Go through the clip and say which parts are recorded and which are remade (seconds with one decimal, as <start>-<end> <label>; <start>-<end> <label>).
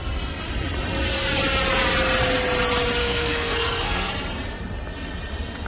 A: 0.0-3.0 recorded; 3.0-4.1 remade; 4.1-5.7 recorded